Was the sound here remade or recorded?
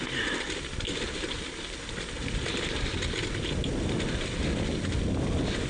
recorded